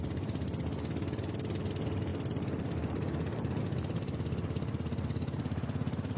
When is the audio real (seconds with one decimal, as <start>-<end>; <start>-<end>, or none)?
0.0-6.2